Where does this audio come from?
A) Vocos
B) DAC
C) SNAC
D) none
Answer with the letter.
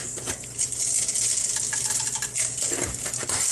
D